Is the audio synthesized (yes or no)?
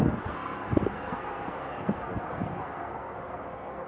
yes